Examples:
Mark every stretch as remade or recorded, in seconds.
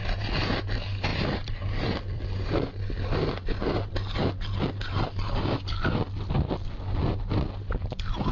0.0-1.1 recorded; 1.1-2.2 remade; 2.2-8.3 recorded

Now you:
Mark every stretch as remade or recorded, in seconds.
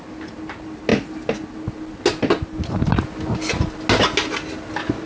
0.0-5.1 recorded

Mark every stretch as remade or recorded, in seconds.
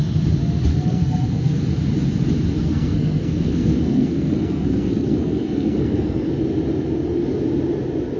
0.0-0.7 recorded; 0.7-1.6 remade; 1.6-2.6 recorded; 2.6-6.3 remade; 6.3-8.2 recorded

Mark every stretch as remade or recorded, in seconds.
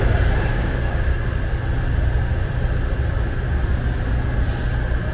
0.0-0.5 recorded; 0.5-1.2 remade; 1.2-5.1 recorded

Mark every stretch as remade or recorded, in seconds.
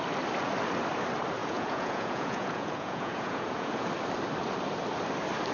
0.0-1.4 recorded; 1.4-3.9 remade; 3.9-5.5 recorded